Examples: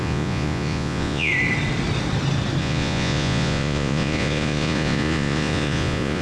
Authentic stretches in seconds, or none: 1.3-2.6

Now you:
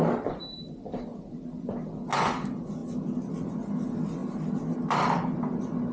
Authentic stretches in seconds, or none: 0.0-5.9

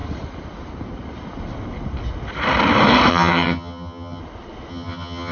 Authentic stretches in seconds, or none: 0.0-3.1; 4.2-4.7

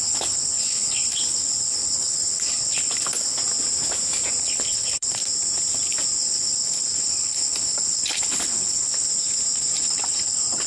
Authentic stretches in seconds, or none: 3.4-4.4; 5.2-6.2; 9.1-9.8